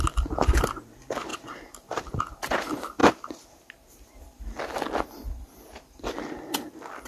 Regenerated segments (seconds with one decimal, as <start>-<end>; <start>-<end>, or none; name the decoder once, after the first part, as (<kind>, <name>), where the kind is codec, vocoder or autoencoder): 1.3-2.1 (vocoder, BigVGAN v2)